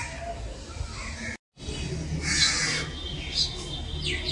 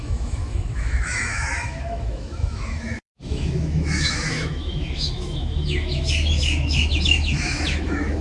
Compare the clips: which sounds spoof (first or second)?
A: second